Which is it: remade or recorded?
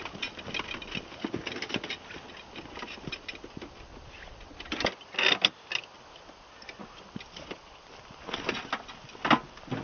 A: recorded